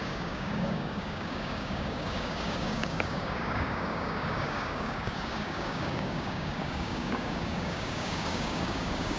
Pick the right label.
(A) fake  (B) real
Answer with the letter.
A